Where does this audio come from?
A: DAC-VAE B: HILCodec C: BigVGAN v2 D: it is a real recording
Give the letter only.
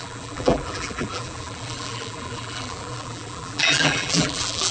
C